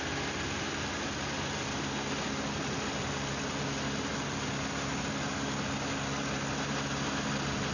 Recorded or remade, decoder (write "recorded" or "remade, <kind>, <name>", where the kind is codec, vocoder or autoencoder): recorded